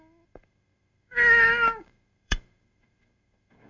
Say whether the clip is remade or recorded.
remade